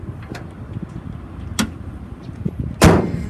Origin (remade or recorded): recorded